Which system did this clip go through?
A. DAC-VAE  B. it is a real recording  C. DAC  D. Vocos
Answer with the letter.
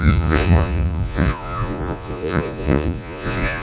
D